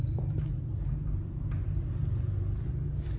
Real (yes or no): yes